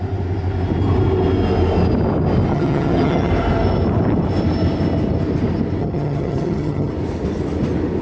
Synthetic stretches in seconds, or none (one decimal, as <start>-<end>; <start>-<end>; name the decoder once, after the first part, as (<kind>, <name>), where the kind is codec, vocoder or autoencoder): 2.5-3.3 (vocoder, HiFi-GAN); 5.8-6.9